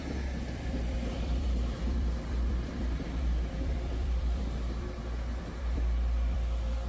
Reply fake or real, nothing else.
fake